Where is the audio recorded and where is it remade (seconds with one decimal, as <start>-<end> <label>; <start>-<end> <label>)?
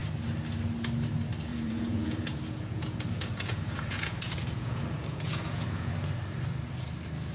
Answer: 0.0-1.5 recorded; 1.5-5.9 remade; 5.9-7.3 recorded